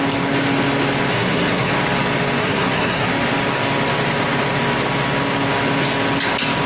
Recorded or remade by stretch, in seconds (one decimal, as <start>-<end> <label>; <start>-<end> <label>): 0.0-1.1 recorded; 1.1-1.7 remade; 1.7-2.4 recorded; 2.4-3.1 remade; 3.1-6.7 recorded